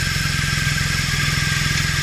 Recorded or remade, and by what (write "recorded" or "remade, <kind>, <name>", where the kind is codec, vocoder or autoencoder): recorded